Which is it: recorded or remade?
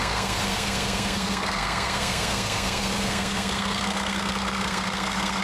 remade